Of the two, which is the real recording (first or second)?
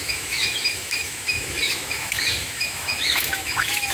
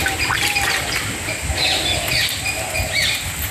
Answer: second